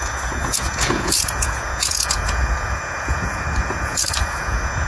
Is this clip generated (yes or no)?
yes